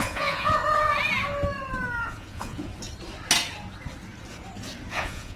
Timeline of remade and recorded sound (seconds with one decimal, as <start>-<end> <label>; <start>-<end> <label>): 0.0-0.6 remade; 0.6-2.0 recorded; 2.0-2.7 remade; 2.7-4.9 recorded; 4.9-5.4 remade